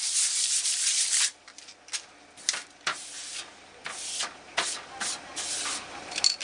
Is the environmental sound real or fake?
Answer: real